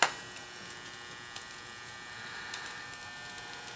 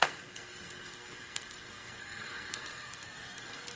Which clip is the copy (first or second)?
second